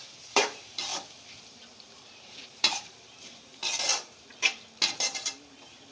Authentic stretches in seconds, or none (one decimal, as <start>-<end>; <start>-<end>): 0.9-1.5; 4.3-5.0